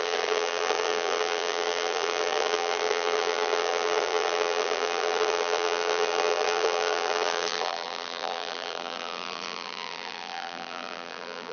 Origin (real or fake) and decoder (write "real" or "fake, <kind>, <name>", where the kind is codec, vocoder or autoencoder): fake, vocoder, BigVGAN v2